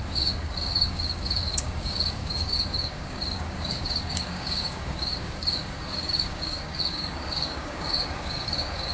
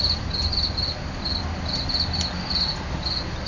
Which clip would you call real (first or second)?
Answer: second